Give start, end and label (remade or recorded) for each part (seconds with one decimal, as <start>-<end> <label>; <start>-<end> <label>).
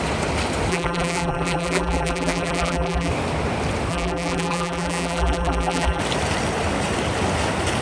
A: 0.0-0.7 recorded; 0.7-3.1 remade; 3.1-3.9 recorded; 3.9-6.0 remade; 6.0-7.8 recorded